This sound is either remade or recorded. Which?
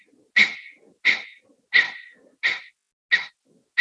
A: recorded